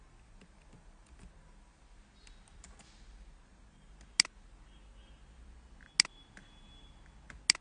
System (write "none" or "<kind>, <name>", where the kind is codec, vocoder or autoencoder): none